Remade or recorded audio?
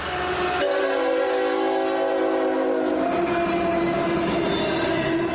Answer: recorded